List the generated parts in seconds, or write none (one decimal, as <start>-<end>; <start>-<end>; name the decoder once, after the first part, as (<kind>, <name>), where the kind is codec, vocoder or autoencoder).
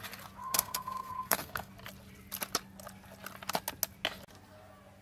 0.4-1.7 (codec, SNAC)